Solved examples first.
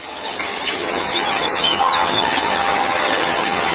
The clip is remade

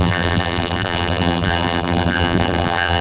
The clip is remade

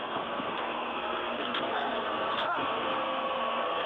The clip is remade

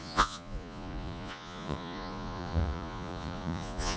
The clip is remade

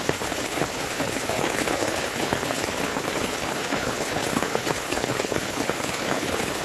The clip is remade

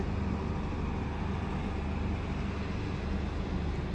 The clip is recorded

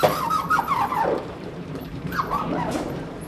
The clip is remade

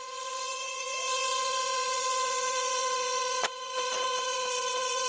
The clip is remade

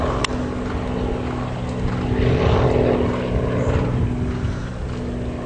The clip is recorded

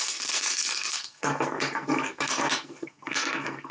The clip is remade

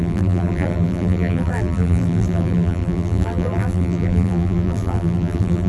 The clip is remade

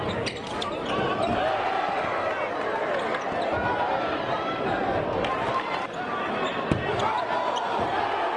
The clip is recorded